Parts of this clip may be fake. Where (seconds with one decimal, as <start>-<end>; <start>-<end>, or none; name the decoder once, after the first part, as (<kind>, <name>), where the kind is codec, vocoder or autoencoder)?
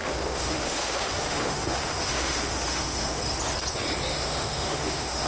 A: 0.0-3.2 (autoencoder, DAC-VAE); 4.1-5.3